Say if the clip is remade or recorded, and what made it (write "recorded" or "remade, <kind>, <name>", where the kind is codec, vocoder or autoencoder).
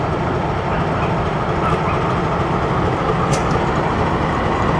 recorded